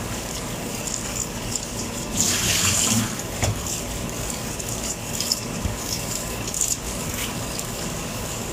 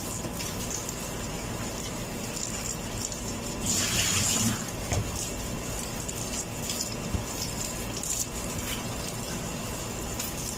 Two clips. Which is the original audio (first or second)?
second